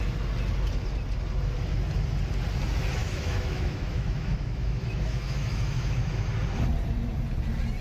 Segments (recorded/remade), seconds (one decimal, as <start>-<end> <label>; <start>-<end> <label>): 0.0-3.0 recorded; 3.0-6.3 remade; 6.3-7.8 recorded